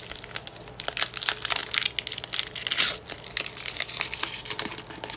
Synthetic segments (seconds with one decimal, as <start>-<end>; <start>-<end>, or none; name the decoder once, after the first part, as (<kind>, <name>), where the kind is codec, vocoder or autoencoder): none